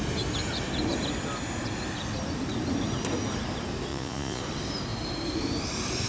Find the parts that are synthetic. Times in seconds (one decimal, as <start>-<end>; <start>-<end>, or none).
3.9-4.4